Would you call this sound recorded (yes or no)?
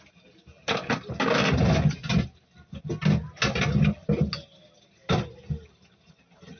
yes